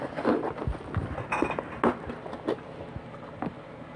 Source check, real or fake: real